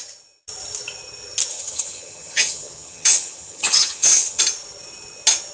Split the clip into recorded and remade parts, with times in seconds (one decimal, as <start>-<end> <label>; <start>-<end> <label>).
0.0-1.5 recorded; 1.5-4.4 remade; 4.4-5.5 recorded